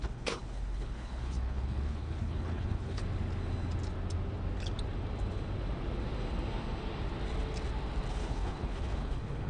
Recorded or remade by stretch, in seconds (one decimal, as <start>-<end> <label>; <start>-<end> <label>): 0.0-3.0 remade; 3.0-8.1 recorded; 8.1-9.5 remade